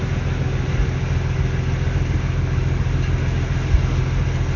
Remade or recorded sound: recorded